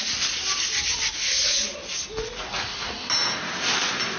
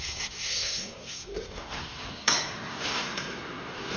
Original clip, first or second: first